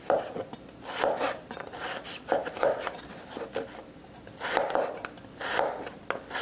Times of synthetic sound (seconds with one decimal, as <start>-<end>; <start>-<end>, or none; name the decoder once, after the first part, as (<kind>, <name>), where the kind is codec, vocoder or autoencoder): none